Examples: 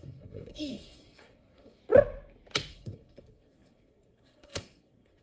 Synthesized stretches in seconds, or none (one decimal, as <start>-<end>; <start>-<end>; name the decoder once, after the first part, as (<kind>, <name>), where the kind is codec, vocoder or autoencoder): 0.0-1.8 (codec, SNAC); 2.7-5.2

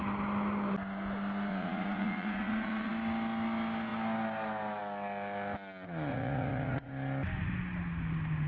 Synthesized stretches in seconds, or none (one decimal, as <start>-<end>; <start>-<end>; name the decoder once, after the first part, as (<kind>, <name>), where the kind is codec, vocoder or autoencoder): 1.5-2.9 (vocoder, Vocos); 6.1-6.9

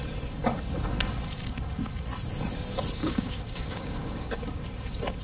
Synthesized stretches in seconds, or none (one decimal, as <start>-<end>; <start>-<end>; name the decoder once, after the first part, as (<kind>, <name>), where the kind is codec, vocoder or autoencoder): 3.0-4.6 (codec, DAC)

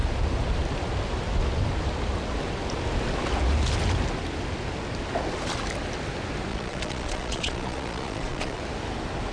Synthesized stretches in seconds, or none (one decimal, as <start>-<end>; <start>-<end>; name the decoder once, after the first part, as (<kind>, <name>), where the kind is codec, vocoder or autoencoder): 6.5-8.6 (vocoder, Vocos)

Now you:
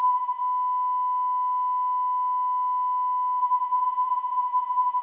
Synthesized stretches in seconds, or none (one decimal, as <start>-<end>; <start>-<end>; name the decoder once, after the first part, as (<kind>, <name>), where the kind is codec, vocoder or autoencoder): 0.0-0.4 (vocoder, Vocos); 3.4-5.0

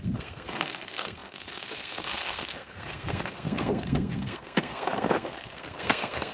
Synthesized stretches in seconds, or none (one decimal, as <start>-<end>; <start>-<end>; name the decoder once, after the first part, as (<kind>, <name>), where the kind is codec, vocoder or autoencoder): 0.0-6.3 (codec, SNAC)

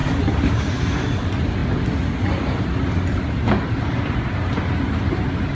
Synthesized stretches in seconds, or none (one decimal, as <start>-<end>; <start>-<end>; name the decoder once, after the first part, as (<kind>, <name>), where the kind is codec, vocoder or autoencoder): none